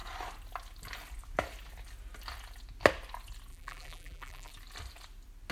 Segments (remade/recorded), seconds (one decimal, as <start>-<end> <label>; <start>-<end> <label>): 0.0-3.5 recorded; 3.5-4.5 remade; 4.5-5.5 recorded